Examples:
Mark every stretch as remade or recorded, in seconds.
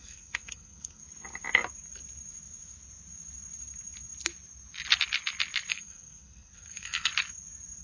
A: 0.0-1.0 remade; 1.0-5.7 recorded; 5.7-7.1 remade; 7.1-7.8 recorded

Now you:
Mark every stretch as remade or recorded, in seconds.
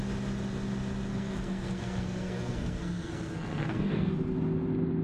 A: 0.0-1.1 recorded; 1.1-4.1 remade; 4.1-5.0 recorded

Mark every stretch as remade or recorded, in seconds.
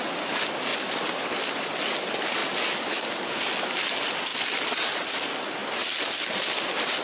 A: 0.0-7.0 recorded